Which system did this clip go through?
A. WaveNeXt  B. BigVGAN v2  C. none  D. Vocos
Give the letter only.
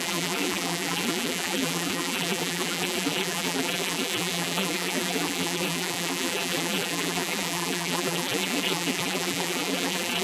B